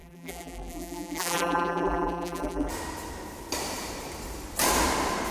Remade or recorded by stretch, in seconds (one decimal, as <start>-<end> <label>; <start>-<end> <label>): 0.0-2.7 remade; 2.7-5.3 recorded